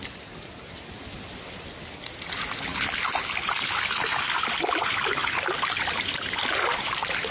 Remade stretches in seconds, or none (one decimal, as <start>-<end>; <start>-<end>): none